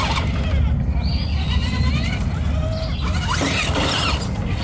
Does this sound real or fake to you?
real